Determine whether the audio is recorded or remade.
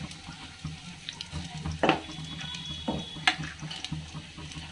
recorded